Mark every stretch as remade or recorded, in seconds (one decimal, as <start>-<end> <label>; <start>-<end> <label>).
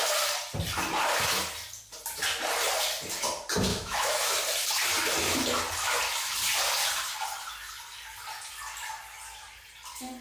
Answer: 0.0-3.7 recorded; 3.7-4.3 remade; 4.3-10.2 recorded